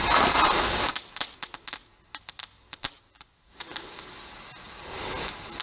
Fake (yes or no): no